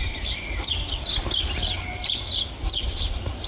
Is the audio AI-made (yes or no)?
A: no